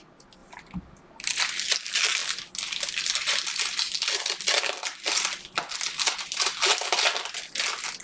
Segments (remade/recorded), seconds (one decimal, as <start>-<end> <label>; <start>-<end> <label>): 0.0-8.0 recorded